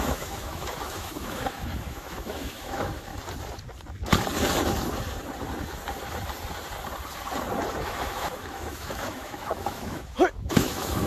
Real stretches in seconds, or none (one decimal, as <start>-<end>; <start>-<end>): 3.1-7.8